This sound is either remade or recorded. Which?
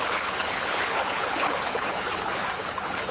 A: remade